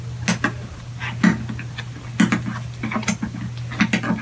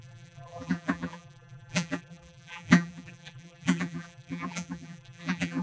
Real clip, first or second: first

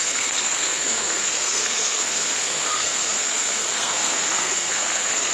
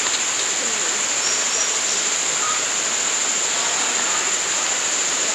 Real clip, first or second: second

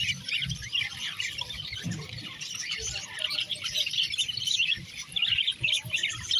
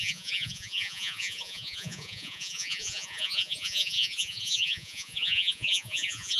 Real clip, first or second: first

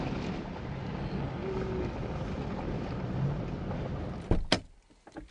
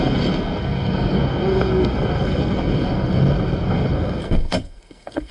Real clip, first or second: first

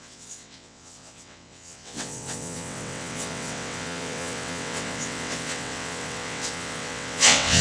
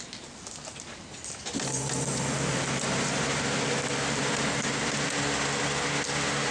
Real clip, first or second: second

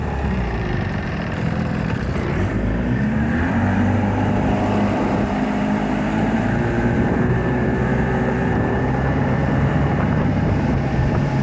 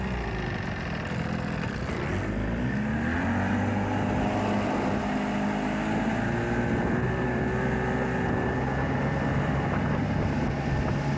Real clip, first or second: second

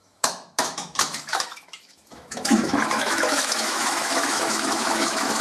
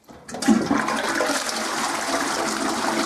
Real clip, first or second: second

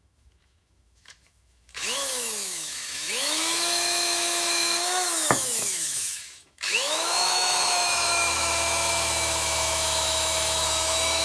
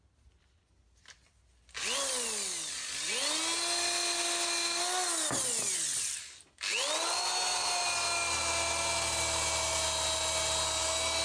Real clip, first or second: second